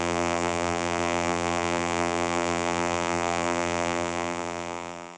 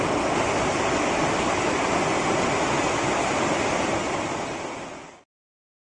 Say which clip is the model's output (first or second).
first